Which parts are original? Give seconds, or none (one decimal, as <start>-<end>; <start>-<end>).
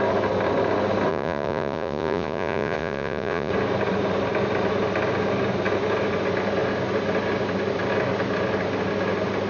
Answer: 0.0-1.1; 3.5-9.5